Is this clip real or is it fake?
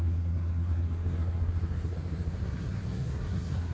fake